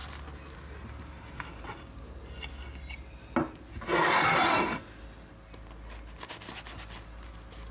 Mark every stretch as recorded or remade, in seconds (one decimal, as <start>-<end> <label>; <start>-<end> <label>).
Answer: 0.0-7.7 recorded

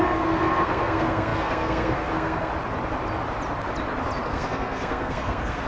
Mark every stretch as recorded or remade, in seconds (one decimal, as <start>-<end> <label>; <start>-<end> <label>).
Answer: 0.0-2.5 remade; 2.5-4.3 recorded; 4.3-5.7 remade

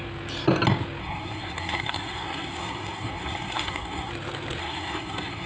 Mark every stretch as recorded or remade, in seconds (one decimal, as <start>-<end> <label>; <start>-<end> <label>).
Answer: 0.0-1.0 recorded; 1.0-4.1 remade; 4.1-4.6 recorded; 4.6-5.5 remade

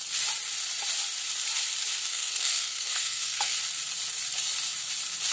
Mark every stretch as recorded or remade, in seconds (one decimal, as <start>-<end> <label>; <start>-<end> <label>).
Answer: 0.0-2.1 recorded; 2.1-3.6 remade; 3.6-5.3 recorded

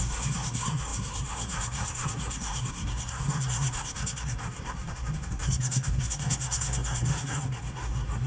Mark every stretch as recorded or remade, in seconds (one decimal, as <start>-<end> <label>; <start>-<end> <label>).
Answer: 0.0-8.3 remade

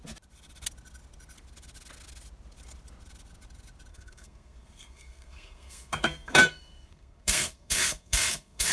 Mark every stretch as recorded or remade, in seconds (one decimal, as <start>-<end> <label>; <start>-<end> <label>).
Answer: 0.0-3.9 recorded; 3.9-8.7 remade